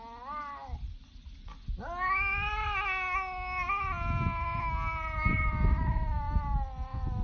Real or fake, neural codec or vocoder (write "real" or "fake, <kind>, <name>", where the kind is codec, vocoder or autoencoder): real